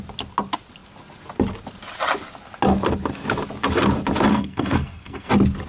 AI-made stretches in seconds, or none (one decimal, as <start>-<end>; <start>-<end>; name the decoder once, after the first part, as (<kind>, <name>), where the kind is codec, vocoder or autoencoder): 4.3-5.3 (codec, SNAC)